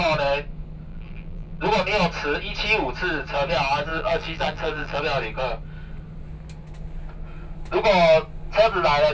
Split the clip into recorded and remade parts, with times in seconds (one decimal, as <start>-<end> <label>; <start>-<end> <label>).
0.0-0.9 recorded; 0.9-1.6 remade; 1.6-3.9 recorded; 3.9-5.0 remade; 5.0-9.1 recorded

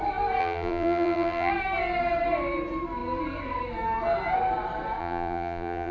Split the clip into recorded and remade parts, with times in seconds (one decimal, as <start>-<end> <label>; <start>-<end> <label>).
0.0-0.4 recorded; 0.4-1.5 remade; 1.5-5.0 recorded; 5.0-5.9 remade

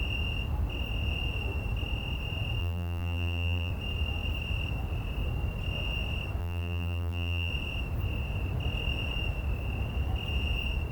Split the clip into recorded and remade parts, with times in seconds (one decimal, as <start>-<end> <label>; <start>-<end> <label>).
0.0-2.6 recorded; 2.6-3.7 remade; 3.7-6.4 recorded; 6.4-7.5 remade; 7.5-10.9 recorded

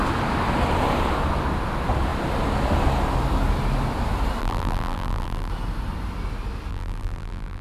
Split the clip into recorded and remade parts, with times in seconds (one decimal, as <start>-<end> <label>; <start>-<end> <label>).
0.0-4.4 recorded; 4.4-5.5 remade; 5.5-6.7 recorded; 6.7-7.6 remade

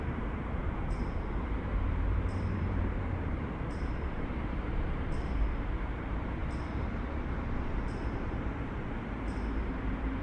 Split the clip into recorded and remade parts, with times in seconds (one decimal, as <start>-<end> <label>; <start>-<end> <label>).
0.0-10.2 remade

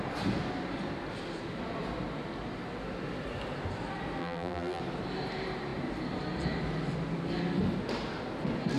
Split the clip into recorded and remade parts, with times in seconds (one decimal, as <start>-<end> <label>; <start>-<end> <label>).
0.0-4.2 recorded; 4.2-4.8 remade; 4.8-8.8 recorded

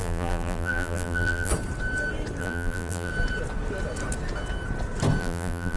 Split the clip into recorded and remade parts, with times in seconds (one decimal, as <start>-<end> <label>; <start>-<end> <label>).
0.0-1.5 remade; 1.5-2.4 recorded; 2.4-3.1 remade; 3.1-5.2 recorded; 5.2-5.8 remade